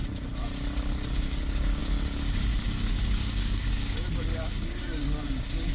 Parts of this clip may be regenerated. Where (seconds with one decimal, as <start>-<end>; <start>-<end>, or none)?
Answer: 1.1-5.7